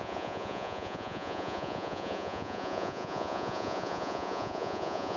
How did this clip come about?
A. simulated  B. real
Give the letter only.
A